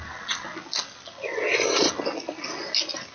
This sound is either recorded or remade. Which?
recorded